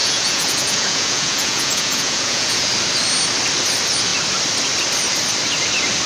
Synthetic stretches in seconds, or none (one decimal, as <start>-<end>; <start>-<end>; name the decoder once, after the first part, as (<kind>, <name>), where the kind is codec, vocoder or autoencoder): 0.0-2.7 (vocoder, Vocos)